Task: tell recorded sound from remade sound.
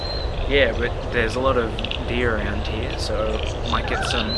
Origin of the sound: recorded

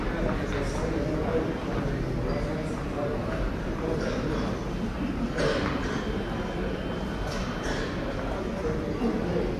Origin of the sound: recorded